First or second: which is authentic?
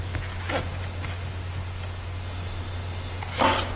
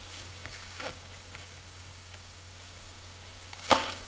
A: first